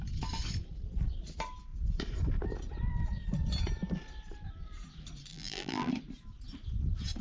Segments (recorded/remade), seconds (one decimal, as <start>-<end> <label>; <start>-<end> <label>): 0.0-5.3 recorded; 5.3-5.9 remade; 5.9-7.2 recorded